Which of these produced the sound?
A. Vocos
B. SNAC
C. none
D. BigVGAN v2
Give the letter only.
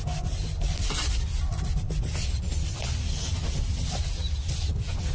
C